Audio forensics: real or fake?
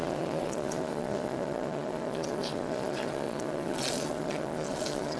fake